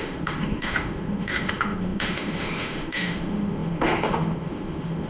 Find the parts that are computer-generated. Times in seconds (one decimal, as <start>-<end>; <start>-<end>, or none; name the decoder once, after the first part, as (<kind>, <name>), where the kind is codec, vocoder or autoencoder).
0.0-5.1 (autoencoder, DAC-VAE)